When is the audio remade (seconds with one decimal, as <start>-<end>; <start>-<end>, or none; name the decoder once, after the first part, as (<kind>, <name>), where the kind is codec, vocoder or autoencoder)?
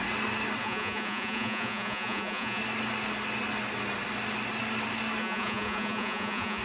0.6-2.6 (vocoder, Vocos); 5.2-6.6